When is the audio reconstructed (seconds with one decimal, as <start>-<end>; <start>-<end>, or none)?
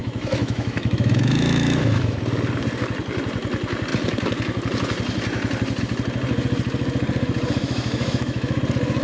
0.0-2.2; 7.6-8.6